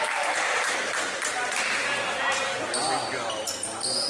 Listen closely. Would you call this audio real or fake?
real